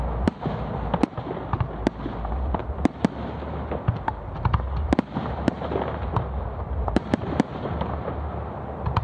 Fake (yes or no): no